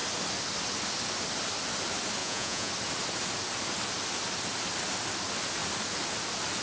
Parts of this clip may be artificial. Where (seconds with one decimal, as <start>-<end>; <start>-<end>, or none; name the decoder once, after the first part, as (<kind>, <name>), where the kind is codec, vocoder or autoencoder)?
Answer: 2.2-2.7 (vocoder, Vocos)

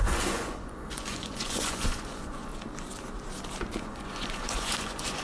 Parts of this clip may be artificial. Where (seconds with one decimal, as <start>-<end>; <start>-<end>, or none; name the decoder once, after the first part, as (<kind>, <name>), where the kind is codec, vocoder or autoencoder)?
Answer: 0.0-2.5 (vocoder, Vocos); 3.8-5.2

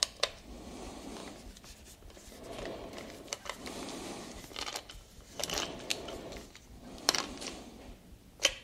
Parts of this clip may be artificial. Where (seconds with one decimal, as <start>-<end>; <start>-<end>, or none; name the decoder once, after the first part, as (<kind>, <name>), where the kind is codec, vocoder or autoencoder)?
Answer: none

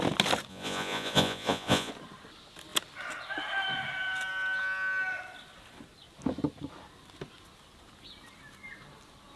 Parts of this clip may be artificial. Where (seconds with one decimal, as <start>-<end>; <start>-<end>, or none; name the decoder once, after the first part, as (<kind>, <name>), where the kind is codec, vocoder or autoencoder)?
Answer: 0.5-1.9 (vocoder, Vocos)